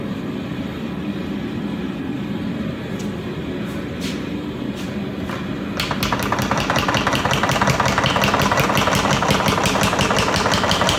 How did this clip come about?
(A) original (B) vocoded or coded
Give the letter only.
A